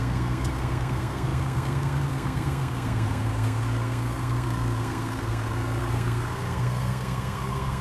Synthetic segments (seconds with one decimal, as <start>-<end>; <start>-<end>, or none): 0.0-7.8